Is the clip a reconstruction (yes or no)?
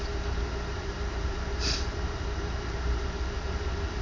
yes